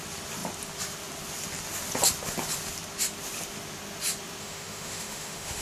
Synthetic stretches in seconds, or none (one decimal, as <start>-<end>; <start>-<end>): 4.4-5.6